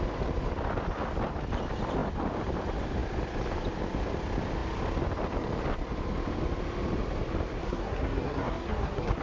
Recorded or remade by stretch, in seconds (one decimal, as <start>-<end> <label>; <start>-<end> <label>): 0.0-7.6 recorded; 7.6-9.2 remade